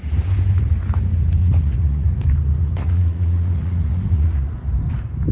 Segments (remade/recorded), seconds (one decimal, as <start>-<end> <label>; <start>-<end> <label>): 0.0-1.4 recorded; 1.4-2.2 remade; 2.2-2.6 recorded; 2.6-4.5 remade; 4.5-5.3 recorded